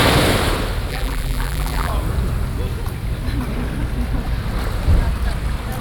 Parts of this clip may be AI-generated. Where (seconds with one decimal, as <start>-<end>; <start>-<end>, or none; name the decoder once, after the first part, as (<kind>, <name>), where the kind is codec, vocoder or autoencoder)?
0.9-1.9 (vocoder, BigVGAN v2)